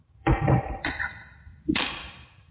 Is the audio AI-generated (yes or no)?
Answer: yes